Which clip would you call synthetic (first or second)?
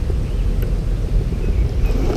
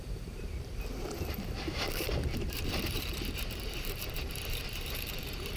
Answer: second